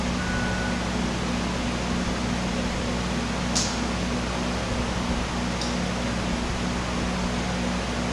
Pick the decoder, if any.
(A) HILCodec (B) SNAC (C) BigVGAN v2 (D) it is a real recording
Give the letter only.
D